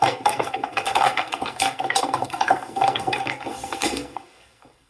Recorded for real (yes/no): no